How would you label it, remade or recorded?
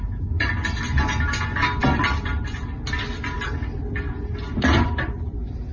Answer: recorded